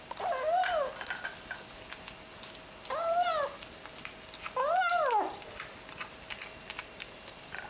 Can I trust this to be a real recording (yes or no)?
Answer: yes